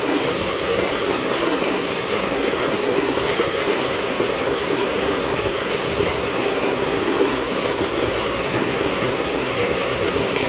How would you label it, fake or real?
fake